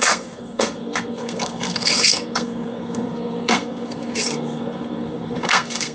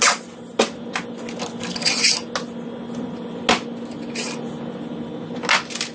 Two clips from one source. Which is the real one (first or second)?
second